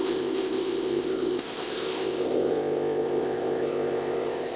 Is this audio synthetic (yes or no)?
yes